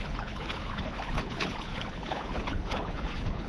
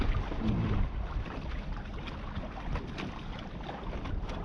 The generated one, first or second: first